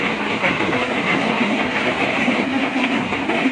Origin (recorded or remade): remade